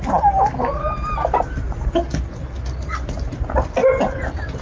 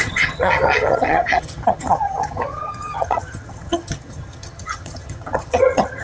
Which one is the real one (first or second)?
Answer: first